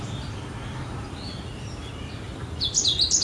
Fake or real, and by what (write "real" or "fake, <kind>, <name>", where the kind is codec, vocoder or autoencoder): real